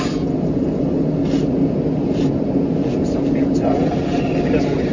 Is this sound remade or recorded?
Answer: recorded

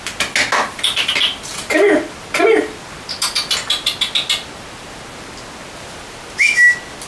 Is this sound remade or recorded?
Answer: recorded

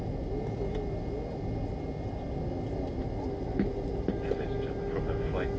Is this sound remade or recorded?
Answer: recorded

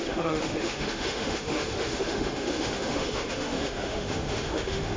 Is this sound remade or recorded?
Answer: remade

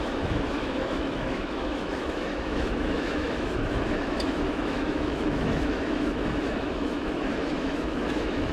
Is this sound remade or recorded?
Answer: remade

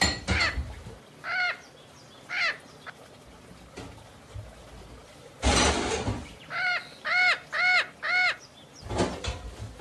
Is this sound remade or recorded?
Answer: recorded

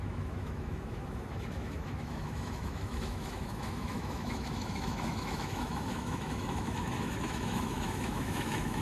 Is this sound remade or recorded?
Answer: remade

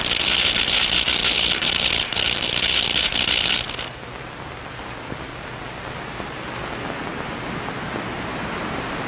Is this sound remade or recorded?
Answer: recorded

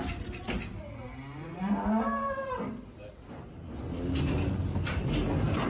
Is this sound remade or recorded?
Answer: recorded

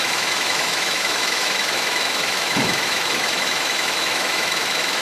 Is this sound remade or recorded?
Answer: remade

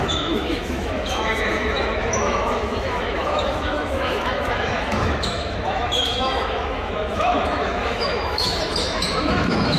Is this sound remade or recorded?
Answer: remade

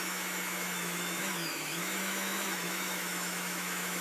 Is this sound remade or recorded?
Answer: remade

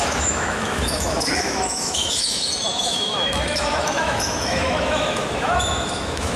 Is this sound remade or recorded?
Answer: remade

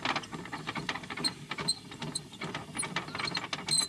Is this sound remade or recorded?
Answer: recorded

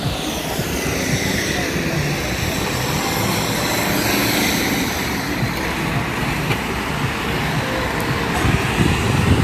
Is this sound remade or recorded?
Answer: recorded